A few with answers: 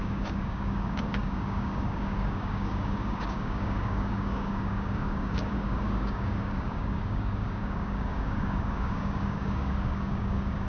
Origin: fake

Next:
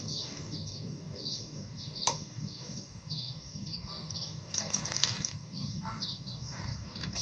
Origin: fake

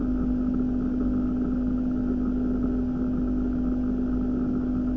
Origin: real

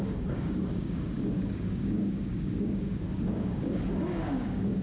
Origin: fake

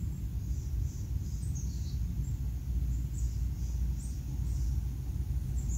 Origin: real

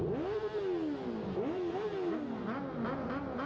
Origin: real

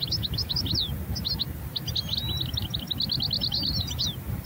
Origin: real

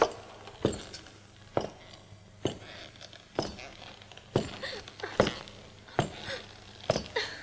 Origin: real